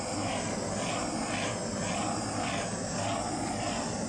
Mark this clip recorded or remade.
recorded